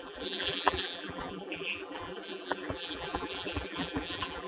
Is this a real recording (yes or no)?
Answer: no